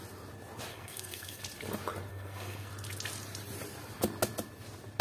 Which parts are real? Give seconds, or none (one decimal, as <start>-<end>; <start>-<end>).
0.0-0.7; 1.4-2.1; 2.7-5.0